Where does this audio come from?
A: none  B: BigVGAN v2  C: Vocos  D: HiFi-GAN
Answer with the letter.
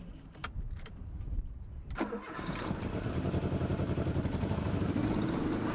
B